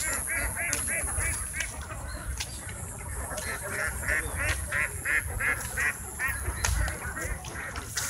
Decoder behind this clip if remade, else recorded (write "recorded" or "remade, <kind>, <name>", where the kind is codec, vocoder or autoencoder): recorded